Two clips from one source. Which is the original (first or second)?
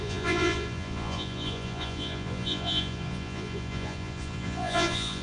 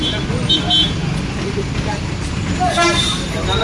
second